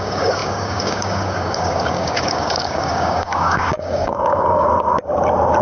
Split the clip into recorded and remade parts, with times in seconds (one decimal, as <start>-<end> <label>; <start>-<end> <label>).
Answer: 0.0-4.7 remade; 4.7-5.6 recorded